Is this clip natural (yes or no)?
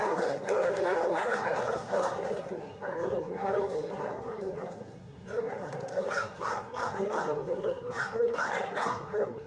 no